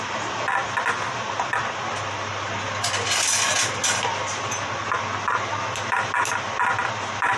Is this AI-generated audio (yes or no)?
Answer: no